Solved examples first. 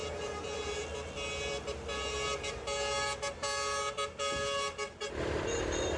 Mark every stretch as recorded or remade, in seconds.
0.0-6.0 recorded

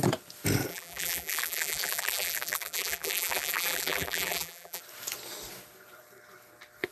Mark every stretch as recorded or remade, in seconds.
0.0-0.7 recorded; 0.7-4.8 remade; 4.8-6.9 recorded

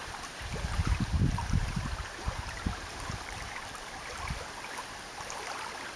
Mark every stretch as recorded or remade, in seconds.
0.0-3.6 remade; 3.6-6.0 recorded

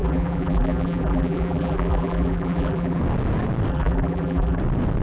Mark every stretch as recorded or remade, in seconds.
0.0-3.0 remade; 3.0-3.7 recorded; 3.7-4.6 remade; 4.6-5.0 recorded

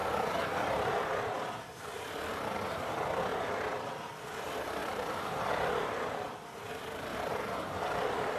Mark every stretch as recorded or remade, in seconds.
0.0-0.7 remade; 0.7-3.3 recorded; 3.3-3.8 remade; 3.8-4.8 recorded; 4.8-8.4 remade

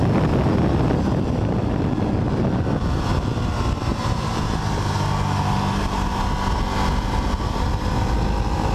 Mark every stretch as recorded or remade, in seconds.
0.0-3.9 recorded; 3.9-4.5 remade; 4.5-8.7 recorded

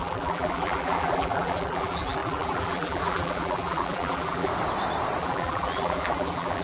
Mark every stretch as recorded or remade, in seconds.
0.0-4.5 remade; 4.5-5.2 recorded; 5.2-6.6 remade